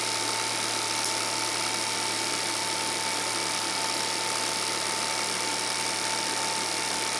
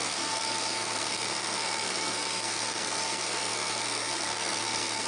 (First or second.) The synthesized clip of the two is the second